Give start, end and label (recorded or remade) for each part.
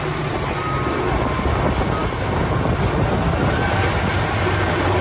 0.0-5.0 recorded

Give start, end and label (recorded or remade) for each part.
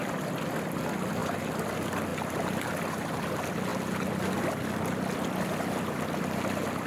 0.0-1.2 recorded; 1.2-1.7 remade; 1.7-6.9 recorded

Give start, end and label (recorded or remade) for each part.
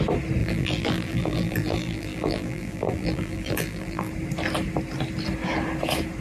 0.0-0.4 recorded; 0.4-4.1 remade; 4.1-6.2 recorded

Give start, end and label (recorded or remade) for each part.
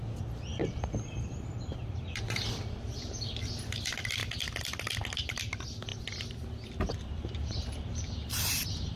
0.0-4.2 remade; 4.2-5.4 recorded; 5.4-9.0 remade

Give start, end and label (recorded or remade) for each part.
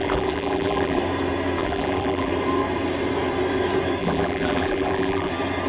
0.0-1.0 remade; 1.0-1.6 recorded; 1.6-2.3 remade; 2.3-4.0 recorded; 4.0-5.3 remade; 5.3-5.7 recorded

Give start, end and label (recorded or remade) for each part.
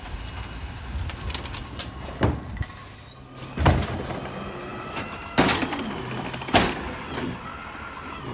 0.0-4.7 recorded; 4.7-6.6 remade; 6.6-8.3 recorded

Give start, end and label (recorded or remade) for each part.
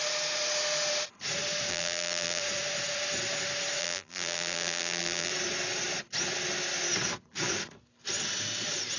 0.0-1.7 recorded; 1.7-2.4 remade; 2.4-3.8 recorded; 3.8-5.3 remade; 5.3-9.0 recorded